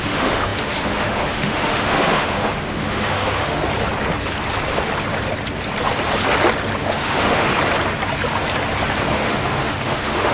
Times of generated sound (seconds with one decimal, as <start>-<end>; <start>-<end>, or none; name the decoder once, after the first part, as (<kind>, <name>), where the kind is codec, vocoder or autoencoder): 0.0-3.6 (autoencoder, DAC-VAE); 6.8-7.5; 9.1-10.3